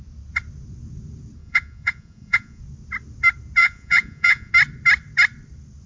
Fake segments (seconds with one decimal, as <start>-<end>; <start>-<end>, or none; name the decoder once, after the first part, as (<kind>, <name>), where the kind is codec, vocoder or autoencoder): 1.4-2.6 (vocoder, Vocos); 3.6-4.5